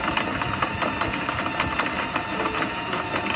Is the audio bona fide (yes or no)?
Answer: yes